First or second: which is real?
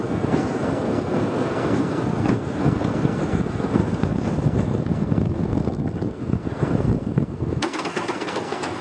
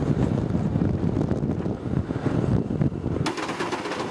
second